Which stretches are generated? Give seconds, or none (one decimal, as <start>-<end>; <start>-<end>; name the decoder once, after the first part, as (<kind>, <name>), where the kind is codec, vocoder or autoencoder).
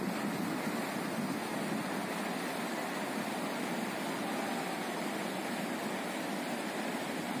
none